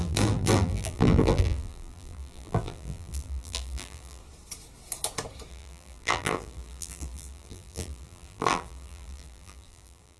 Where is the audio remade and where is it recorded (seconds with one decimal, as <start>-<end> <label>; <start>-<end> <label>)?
0.0-4.2 remade; 4.2-5.5 recorded; 5.5-10.2 remade